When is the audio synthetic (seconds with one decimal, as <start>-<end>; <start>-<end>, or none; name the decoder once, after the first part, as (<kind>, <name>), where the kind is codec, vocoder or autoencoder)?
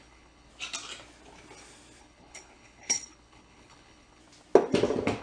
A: 0.0-0.5 (codec, HILCodec); 2.0-4.2